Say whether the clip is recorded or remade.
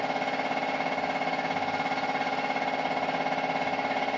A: recorded